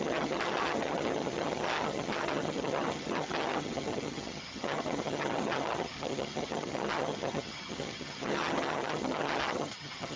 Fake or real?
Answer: fake